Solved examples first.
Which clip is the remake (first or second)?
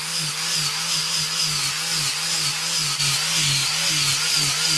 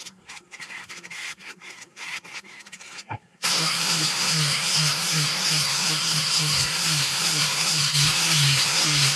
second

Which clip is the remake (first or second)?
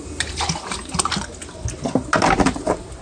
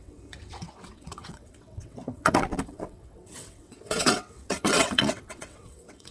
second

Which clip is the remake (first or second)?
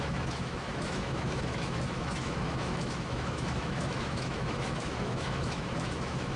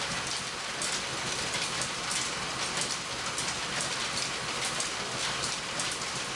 first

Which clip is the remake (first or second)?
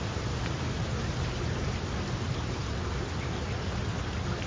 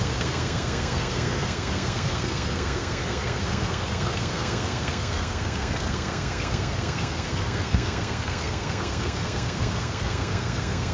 second